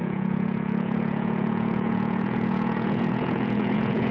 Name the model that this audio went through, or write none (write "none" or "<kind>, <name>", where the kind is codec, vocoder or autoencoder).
vocoder, Vocos